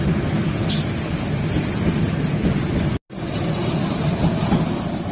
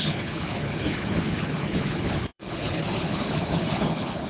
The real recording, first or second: first